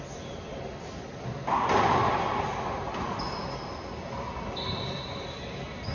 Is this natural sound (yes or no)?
yes